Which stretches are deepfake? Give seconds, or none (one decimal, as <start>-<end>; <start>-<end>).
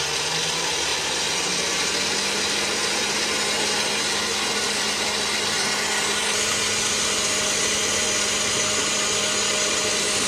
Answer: none